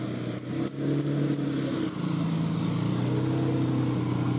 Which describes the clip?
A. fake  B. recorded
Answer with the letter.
B